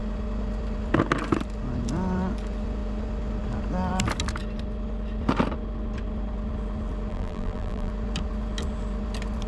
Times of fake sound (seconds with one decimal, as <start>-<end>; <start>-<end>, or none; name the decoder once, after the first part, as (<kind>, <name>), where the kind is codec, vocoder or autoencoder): 7.1-7.9 (vocoder, BigVGAN v2)